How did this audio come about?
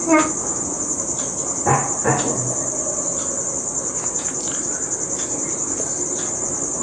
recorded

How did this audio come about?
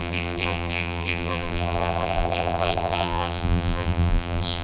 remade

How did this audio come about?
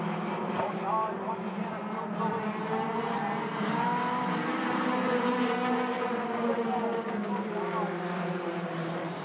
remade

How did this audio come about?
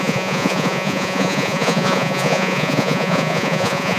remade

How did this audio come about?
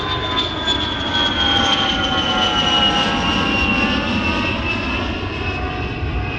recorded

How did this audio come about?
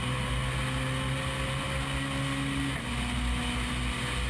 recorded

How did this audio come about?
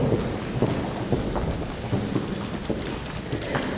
recorded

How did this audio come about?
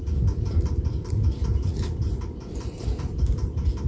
recorded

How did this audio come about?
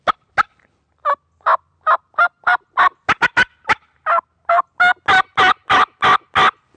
recorded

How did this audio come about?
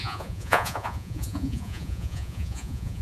remade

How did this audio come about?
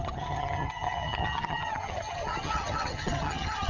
remade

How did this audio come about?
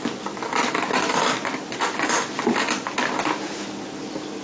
recorded